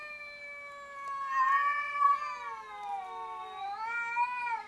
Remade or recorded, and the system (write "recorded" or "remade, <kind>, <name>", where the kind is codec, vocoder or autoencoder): recorded